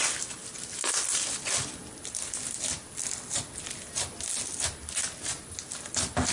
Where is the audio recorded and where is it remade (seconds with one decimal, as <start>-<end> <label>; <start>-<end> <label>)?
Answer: 0.0-6.3 recorded